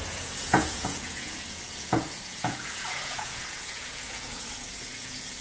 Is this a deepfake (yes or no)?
yes